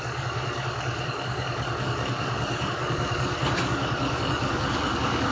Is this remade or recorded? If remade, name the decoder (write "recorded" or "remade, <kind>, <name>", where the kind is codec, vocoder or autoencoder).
remade, codec, DAC